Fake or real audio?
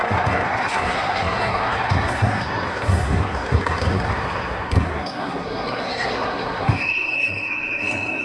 fake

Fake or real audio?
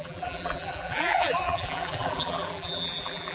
fake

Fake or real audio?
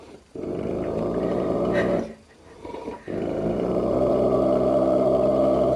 fake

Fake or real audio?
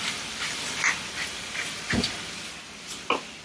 real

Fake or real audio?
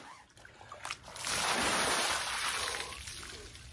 real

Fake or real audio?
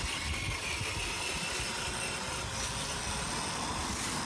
real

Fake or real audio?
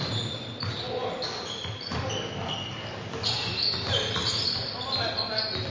real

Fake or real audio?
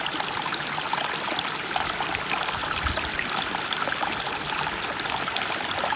fake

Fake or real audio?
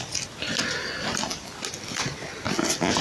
real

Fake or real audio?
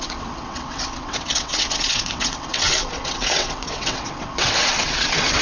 fake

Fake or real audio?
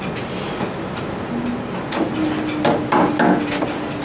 real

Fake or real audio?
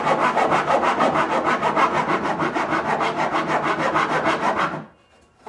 real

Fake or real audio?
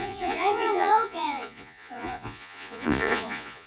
fake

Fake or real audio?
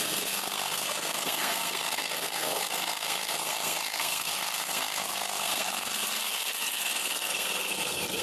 fake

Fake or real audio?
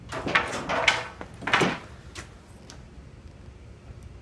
real